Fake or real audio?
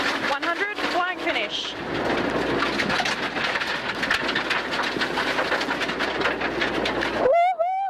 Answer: real